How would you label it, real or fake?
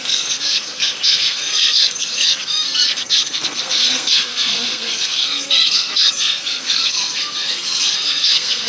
fake